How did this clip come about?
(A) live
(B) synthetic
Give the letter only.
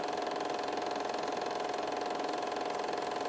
A